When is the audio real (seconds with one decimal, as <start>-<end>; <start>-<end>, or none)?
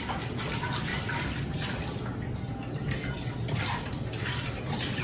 0.0-5.0